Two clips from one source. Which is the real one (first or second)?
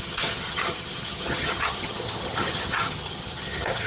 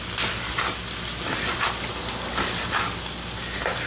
second